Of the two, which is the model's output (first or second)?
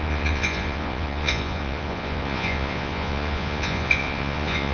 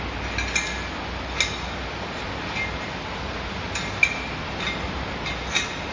first